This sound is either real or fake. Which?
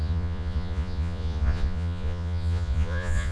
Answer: fake